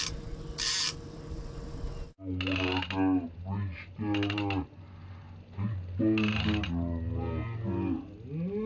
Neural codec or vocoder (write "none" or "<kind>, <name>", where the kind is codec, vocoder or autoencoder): none